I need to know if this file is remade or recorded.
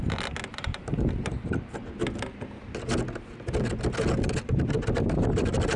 recorded